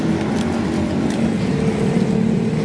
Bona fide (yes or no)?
yes